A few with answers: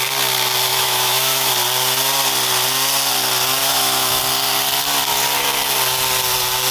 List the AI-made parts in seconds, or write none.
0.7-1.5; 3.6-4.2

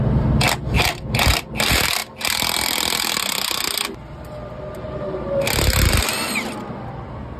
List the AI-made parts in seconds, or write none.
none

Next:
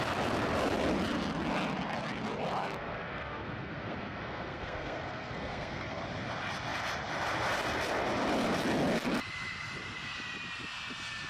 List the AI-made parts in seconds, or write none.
2.6-6.0

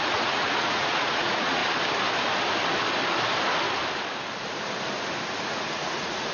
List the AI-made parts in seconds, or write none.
0.0-1.6; 5.4-6.3

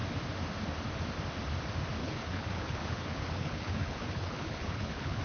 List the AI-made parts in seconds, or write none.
2.0-5.2

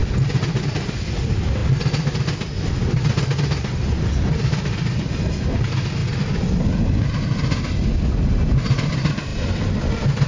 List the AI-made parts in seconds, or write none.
0.7-1.6; 4.3-6.0; 8.9-10.3